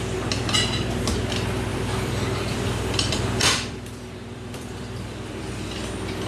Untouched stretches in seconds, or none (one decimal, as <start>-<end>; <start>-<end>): 0.0-1.7; 5.5-6.3